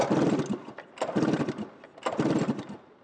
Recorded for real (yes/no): yes